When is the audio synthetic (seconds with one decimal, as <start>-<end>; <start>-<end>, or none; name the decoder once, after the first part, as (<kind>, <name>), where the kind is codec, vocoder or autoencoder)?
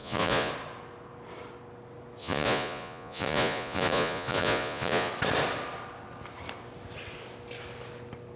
0.0-0.5 (vocoder, Vocos); 2.2-5.1